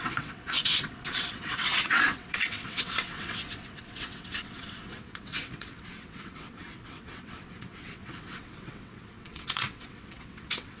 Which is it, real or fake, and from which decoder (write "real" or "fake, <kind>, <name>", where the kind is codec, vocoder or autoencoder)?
fake, vocoder, WaveNeXt